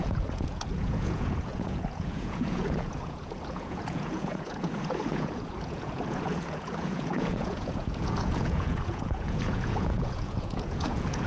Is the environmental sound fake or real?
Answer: fake